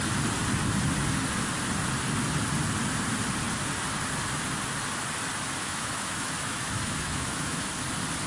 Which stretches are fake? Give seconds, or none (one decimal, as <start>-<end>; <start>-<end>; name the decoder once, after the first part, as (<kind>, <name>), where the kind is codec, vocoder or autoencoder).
5.6-7.7 (autoencoder, DAC-VAE)